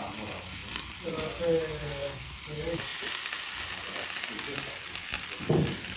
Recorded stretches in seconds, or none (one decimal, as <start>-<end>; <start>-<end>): 0.0-1.8; 2.4-6.0